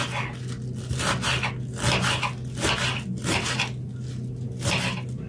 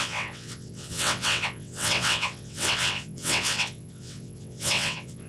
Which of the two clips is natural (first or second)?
first